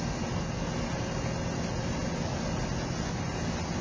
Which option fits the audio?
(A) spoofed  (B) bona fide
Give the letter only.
B